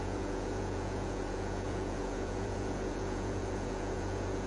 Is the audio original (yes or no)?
no